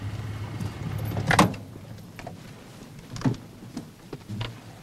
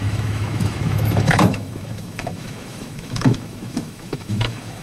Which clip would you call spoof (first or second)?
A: second